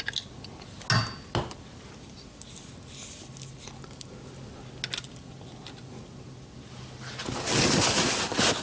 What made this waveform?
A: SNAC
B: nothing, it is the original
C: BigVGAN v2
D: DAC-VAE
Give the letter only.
B